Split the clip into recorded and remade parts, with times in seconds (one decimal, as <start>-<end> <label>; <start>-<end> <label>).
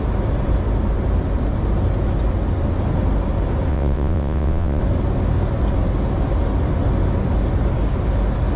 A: 0.0-3.7 recorded; 3.7-4.8 remade; 4.8-8.6 recorded